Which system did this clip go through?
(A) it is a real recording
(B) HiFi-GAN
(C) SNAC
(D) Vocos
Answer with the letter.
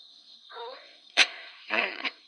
C